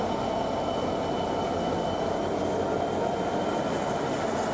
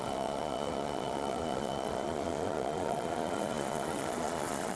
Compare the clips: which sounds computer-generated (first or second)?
second